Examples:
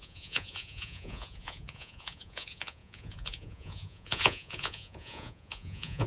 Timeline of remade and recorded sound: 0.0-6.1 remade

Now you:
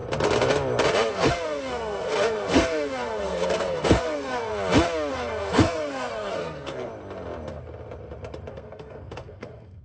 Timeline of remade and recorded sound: 0.0-1.1 recorded; 1.1-4.5 remade; 4.5-5.1 recorded; 5.1-6.9 remade; 6.9-8.5 recorded; 8.5-9.8 remade